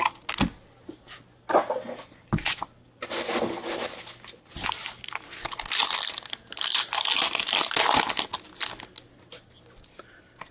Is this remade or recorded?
recorded